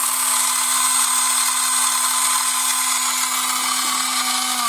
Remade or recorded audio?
recorded